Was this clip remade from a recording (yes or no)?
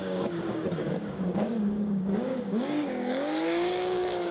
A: yes